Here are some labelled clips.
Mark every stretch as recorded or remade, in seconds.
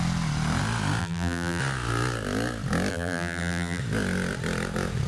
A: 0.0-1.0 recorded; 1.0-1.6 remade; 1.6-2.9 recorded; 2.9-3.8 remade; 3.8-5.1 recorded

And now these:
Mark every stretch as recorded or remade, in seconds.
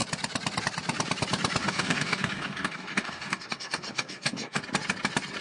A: 0.0-1.6 recorded; 1.6-4.6 remade; 4.6-5.4 recorded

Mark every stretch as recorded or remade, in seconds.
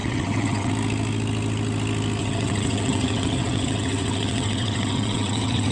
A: 0.0-0.7 remade; 0.7-2.2 recorded; 2.2-5.7 remade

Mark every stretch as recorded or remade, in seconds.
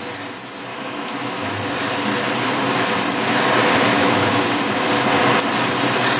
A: 0.0-0.7 recorded; 0.7-1.5 remade; 1.5-3.9 recorded; 3.9-4.4 remade; 4.4-6.2 recorded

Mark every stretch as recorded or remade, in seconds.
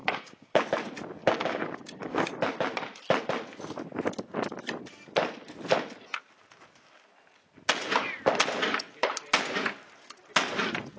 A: 0.0-0.6 remade; 0.6-1.2 recorded; 1.2-2.4 remade; 2.4-11.0 recorded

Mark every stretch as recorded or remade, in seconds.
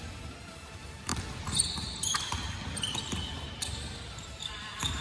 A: 0.0-1.1 remade; 1.1-4.1 recorded; 4.1-5.0 remade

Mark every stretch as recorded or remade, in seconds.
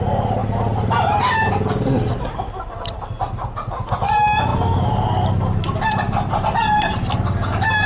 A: 0.0-7.9 recorded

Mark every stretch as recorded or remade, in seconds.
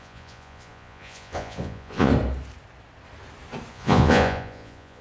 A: 0.0-2.1 remade; 2.1-3.7 recorded; 3.7-5.0 remade